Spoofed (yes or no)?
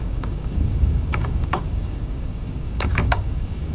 yes